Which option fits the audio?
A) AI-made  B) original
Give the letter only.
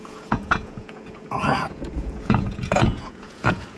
A